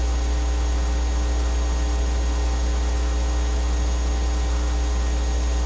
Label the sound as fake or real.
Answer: real